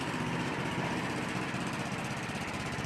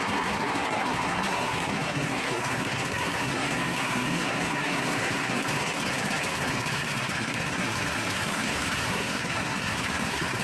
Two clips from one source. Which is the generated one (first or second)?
second